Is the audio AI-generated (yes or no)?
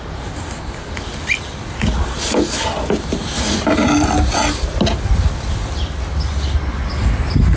no